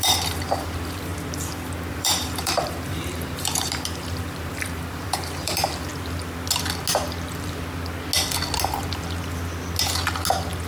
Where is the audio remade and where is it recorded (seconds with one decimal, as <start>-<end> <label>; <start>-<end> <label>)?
0.0-1.1 remade; 1.1-1.9 recorded; 1.9-5.9 remade; 5.9-10.7 recorded